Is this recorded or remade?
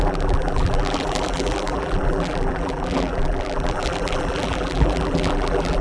remade